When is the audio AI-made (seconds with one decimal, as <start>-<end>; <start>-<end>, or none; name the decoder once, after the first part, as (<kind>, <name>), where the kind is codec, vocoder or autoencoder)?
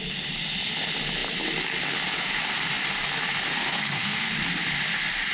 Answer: 3.5-4.3 (codec, SNAC)